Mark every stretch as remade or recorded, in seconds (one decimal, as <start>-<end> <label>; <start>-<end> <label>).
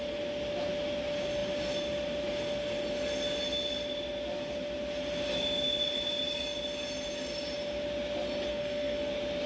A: 0.0-8.5 recorded; 8.5-9.1 remade; 9.1-9.5 recorded